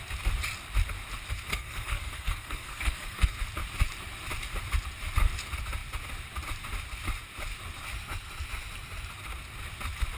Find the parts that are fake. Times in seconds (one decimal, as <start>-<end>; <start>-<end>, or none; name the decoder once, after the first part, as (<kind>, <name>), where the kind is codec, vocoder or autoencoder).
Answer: 1.5-3.4 (codec, SNAC)